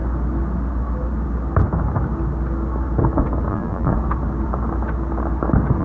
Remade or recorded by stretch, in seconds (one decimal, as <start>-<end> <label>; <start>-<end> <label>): 0.0-3.5 recorded; 3.5-3.9 remade; 3.9-5.8 recorded